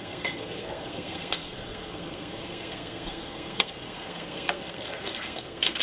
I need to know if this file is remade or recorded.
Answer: remade